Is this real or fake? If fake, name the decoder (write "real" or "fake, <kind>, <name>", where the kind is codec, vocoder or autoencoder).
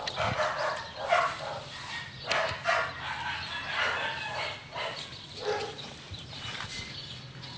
real